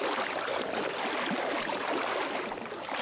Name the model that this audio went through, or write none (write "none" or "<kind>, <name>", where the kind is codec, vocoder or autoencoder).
none